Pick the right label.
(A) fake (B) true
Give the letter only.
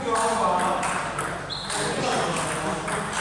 B